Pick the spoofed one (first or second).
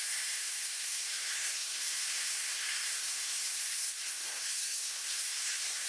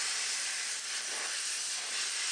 first